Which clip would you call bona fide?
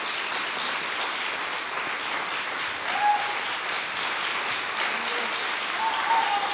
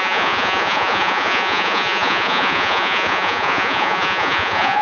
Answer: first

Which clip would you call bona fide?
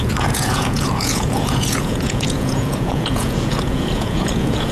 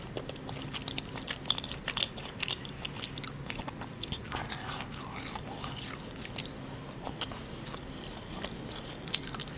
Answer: second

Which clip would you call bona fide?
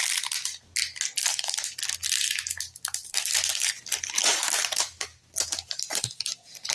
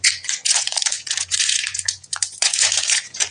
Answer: first